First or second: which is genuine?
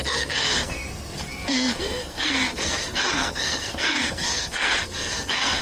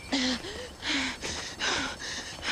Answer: second